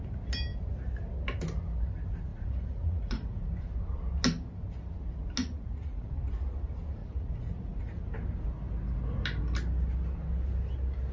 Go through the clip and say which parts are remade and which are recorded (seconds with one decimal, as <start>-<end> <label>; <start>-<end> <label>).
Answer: 0.0-2.3 recorded; 2.3-3.5 remade; 3.5-5.4 recorded; 5.4-6.1 remade; 6.1-7.0 recorded; 7.0-8.1 remade; 8.1-11.1 recorded